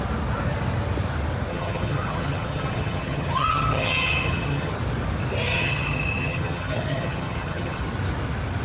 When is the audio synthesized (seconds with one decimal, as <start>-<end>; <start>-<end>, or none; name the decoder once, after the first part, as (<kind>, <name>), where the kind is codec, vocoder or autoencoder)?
1.5-4.7 (vocoder, HiFi-GAN); 5.5-7.8